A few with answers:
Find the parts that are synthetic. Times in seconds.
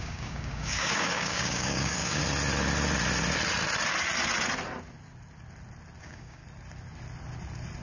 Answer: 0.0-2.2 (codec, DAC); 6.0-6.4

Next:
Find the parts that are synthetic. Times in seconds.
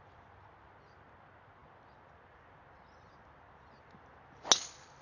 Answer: none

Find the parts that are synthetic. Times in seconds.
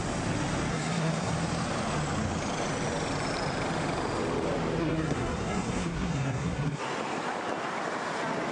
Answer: 0.7-1.3 (codec, SNAC); 4.8-6.8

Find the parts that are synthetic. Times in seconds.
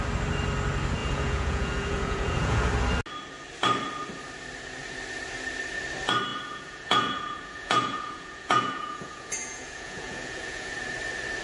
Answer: 1.0-2.7 (vocoder, Vocos); 6.3-10.7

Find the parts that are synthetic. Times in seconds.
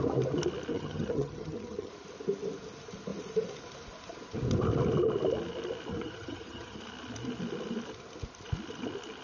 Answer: 0.7-1.9 (vocoder, HiFi-GAN); 5.9-6.8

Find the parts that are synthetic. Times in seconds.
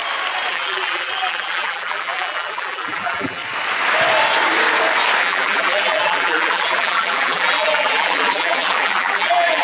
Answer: 0.5-3.4 (vocoder, BigVGAN v2); 5.2-9.6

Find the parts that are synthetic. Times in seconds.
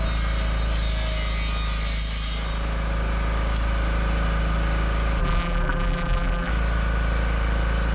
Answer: 5.2-6.5 (vocoder, BigVGAN v2)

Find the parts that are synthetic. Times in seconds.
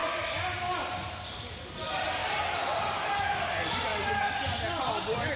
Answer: none